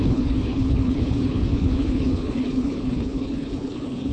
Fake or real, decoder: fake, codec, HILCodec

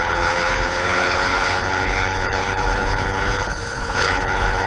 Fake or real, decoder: fake, codec, HILCodec